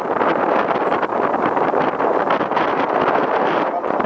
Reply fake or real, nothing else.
real